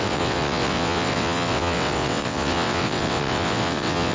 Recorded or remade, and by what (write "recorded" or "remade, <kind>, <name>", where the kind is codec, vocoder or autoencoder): remade, vocoder, WaveNeXt